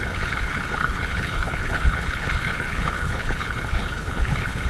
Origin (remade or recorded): remade